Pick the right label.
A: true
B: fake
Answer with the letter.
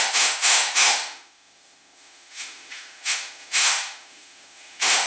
B